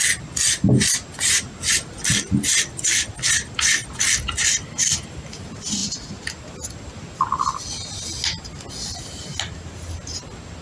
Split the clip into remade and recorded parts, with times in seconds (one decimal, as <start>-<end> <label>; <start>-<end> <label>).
0.0-10.6 recorded